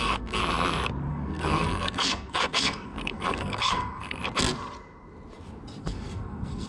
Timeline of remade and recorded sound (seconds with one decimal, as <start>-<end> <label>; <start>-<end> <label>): 0.0-0.4 remade; 0.4-1.1 recorded; 1.1-4.2 remade; 4.2-5.8 recorded; 5.8-6.7 remade